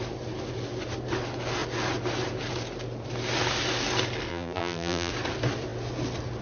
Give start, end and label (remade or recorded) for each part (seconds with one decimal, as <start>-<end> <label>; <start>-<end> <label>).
0.0-4.3 recorded; 4.3-5.1 remade; 5.1-6.4 recorded